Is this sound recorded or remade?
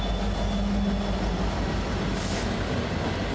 recorded